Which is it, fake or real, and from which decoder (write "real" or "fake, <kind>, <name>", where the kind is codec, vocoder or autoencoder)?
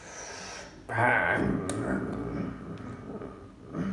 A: real